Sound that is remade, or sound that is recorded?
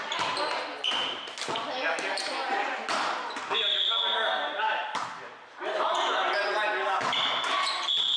recorded